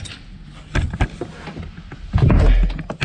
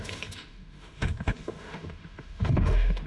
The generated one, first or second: second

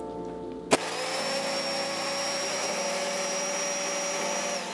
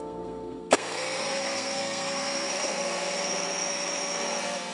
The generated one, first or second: second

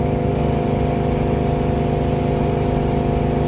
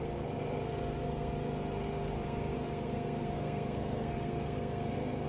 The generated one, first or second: second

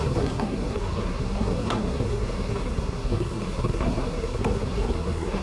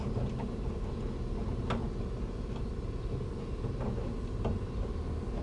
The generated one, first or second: first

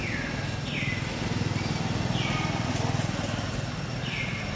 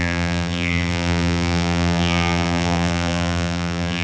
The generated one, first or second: second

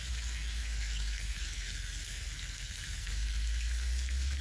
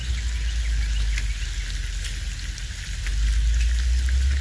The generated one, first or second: first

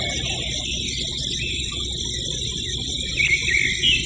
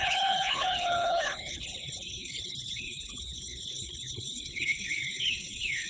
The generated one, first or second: second